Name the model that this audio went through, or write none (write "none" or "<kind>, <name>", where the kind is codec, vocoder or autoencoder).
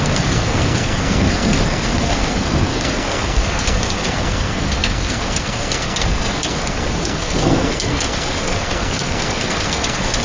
codec, SNAC